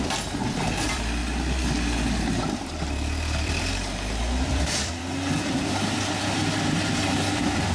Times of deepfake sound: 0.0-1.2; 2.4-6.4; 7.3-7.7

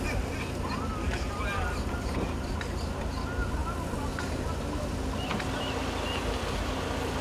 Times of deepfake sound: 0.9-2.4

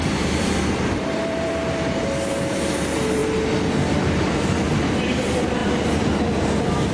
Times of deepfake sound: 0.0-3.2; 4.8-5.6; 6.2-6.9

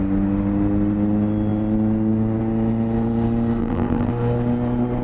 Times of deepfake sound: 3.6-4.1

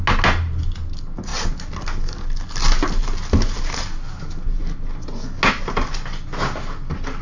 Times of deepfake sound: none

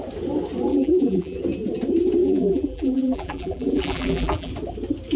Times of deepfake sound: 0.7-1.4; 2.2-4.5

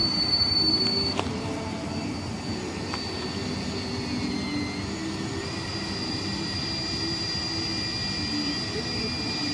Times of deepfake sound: 0.0-1.6; 5.0-6.6